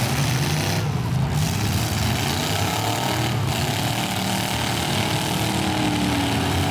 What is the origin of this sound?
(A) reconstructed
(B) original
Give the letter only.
B